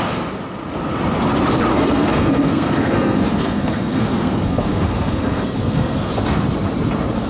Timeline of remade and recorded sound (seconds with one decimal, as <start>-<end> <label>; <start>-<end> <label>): 0.0-1.7 recorded; 1.7-6.1 remade; 6.1-7.3 recorded